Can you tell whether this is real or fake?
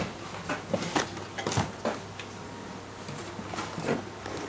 real